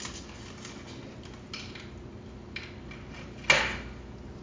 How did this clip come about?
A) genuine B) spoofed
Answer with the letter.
A